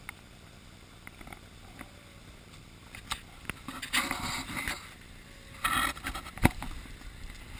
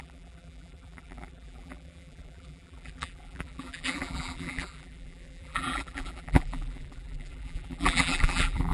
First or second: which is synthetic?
second